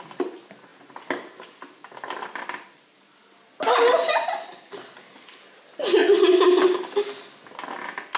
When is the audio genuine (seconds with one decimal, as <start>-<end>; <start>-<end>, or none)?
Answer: 0.0-8.2